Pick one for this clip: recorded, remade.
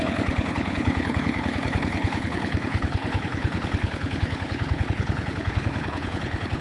remade